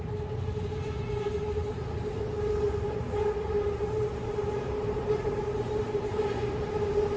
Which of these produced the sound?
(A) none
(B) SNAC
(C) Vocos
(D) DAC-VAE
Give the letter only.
A